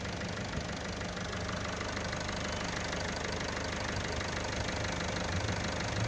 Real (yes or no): yes